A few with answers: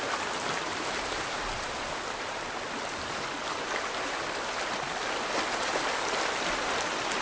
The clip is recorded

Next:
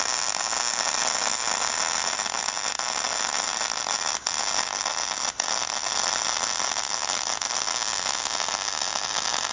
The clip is recorded